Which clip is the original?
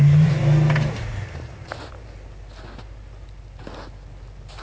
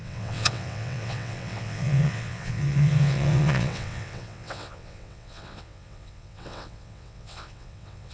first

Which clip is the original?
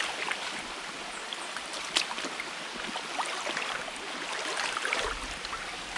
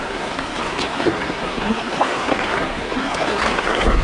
first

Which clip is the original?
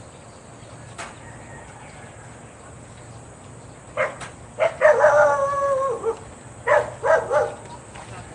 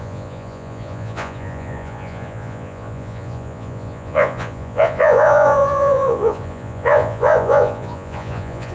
first